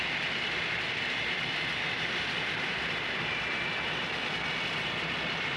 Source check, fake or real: fake